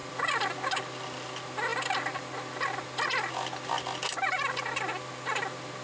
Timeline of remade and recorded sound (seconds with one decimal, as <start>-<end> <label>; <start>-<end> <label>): 0.0-0.8 remade; 0.8-5.8 recorded